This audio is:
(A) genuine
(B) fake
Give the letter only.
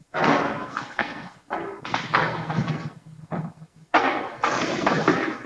B